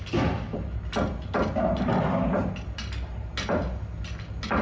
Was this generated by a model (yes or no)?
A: no